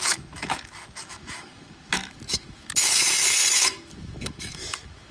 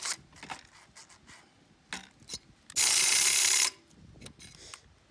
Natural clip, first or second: second